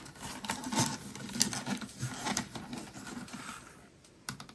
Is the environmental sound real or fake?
real